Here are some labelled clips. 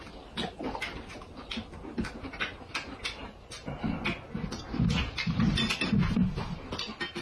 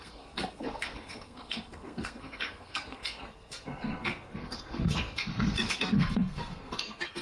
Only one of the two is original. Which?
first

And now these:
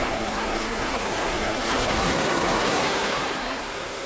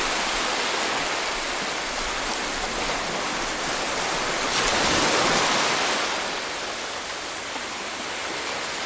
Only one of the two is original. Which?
second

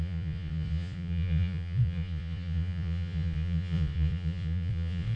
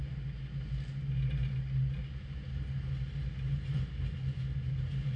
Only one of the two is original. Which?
second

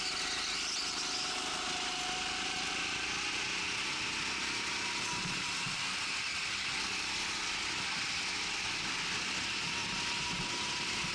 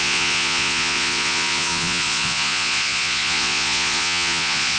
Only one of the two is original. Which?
first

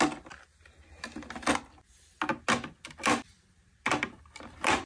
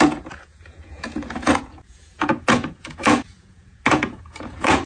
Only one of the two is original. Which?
first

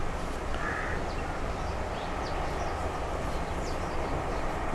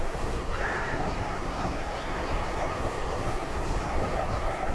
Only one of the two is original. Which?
first